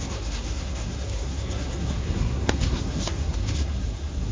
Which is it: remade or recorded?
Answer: remade